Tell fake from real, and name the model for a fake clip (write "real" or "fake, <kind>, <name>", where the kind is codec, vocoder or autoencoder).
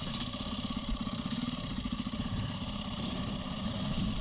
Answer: fake, vocoder, BigVGAN v2